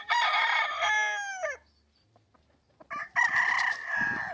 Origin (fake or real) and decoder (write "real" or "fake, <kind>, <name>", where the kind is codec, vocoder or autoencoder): real